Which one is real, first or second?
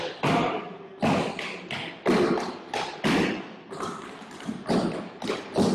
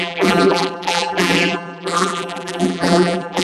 first